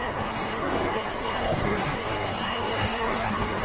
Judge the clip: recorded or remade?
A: remade